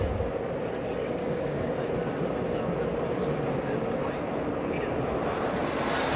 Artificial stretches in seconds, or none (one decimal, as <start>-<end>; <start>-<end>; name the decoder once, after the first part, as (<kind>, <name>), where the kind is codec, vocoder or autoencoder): 1.2-1.7 (codec, DAC)